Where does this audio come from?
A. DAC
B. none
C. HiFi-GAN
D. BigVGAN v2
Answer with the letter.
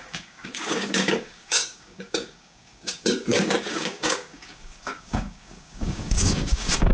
A